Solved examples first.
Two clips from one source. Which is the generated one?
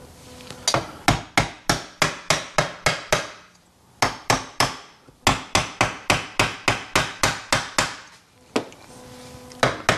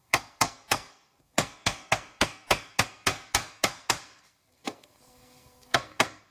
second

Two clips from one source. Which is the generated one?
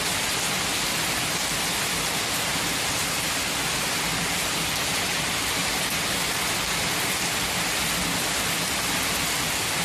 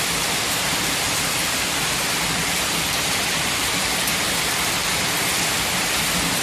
second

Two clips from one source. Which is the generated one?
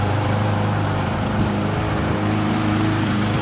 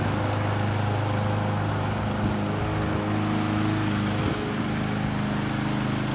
first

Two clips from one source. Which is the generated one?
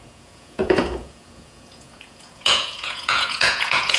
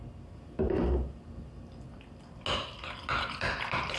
first